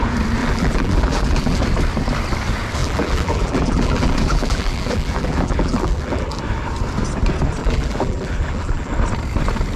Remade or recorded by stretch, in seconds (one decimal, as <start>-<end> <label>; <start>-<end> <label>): 0.0-0.4 recorded; 0.4-1.6 remade; 1.6-2.8 recorded; 2.8-6.4 remade; 6.4-7.6 recorded; 7.6-8.9 remade; 8.9-9.8 recorded